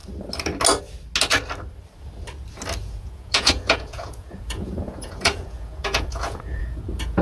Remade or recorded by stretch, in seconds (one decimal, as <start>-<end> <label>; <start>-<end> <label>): 0.0-2.8 recorded; 2.8-7.2 remade

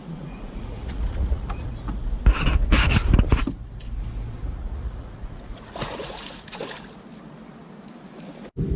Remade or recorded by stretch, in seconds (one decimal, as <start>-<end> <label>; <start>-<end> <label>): 0.0-1.7 remade; 1.7-4.4 recorded; 4.4-6.6 remade; 6.6-8.8 recorded

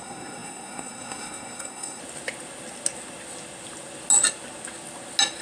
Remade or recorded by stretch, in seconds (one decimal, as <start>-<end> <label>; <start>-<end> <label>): 0.0-2.0 remade; 2.0-5.4 recorded